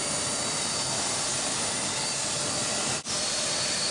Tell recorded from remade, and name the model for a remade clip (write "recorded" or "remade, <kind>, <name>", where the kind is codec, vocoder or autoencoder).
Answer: recorded